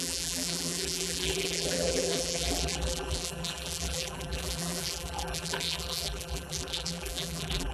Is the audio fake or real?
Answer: fake